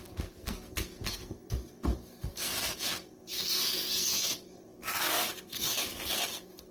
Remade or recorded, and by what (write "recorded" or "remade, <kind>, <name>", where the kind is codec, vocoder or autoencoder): remade, codec, SNAC